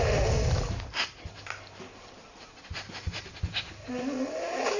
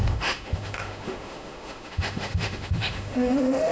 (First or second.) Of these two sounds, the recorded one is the first